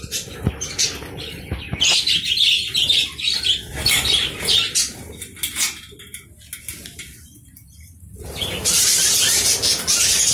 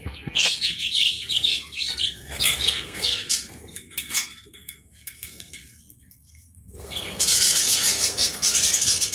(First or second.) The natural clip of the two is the first